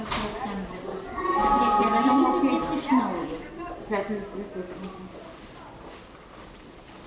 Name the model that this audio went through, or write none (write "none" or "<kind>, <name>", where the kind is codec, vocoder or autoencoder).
none